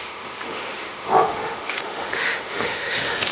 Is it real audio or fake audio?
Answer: fake